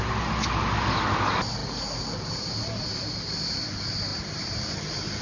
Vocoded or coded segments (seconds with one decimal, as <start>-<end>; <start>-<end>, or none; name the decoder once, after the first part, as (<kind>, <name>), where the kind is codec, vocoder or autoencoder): none